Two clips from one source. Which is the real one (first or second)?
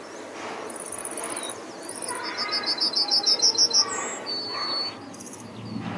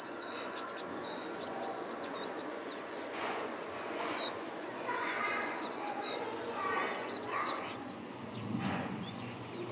first